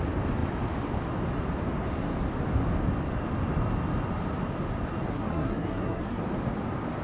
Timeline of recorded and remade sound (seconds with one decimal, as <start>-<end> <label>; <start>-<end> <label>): 0.0-5.1 recorded; 5.1-6.2 remade; 6.2-7.0 recorded